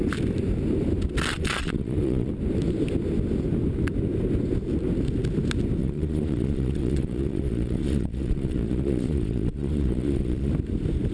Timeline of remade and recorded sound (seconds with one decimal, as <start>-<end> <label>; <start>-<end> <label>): 0.0-1.3 recorded; 1.3-2.3 remade; 2.3-5.8 recorded; 5.8-10.5 remade; 10.5-11.1 recorded